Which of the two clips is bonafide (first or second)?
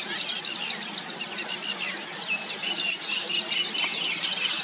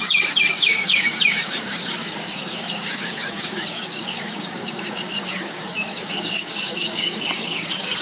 first